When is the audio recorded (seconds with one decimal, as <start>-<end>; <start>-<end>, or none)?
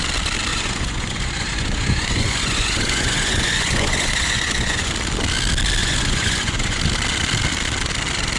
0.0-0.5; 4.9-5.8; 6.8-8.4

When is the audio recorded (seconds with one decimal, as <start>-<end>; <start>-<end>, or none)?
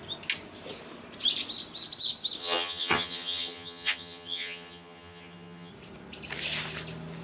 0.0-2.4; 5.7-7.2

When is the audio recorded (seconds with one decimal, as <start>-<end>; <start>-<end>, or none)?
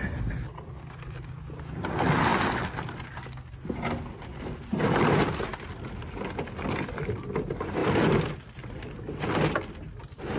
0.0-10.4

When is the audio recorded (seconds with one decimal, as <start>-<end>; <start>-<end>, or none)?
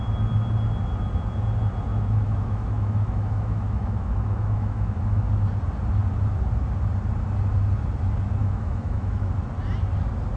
0.0-1.9; 5.3-8.4; 9.3-10.4